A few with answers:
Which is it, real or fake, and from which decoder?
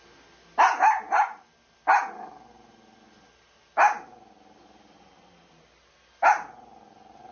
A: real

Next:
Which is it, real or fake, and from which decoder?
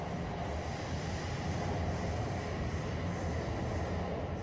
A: real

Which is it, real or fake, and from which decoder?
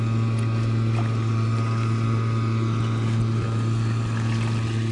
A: real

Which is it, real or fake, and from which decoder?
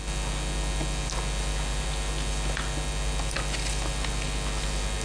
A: real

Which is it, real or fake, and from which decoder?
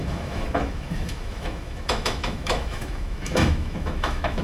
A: fake, autoencoder, DAC-VAE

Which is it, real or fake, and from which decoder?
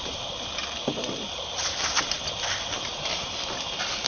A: real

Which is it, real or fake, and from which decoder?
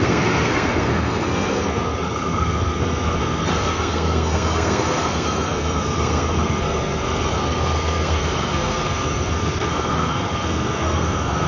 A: fake, codec, SNAC